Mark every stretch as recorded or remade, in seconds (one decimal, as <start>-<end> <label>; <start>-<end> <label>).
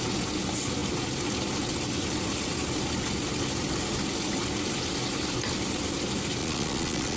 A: 0.0-6.4 recorded; 6.4-7.2 remade